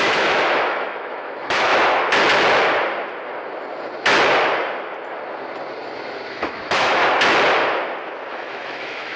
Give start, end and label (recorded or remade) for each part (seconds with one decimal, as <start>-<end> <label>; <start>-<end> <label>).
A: 0.0-1.7 remade; 1.7-6.3 recorded; 6.3-7.0 remade; 7.0-8.3 recorded; 8.3-9.2 remade